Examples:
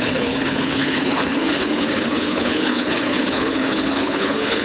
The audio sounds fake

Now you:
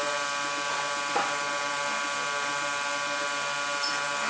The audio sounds real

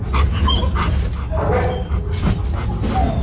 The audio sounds real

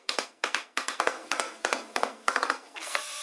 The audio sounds fake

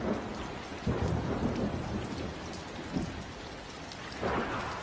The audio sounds real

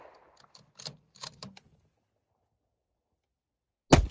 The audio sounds real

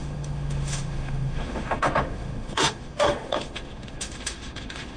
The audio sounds fake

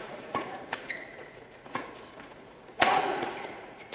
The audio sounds fake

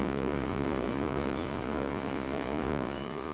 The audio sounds fake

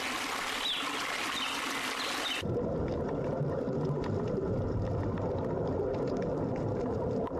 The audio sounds real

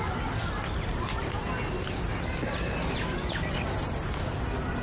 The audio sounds real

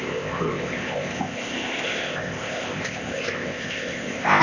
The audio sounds fake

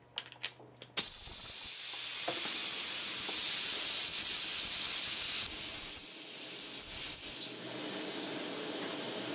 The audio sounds real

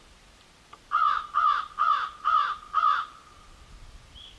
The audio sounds real